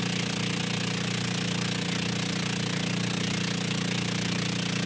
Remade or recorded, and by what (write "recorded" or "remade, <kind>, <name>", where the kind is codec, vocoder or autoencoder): recorded